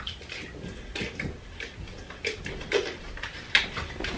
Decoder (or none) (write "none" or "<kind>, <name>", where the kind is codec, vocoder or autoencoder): none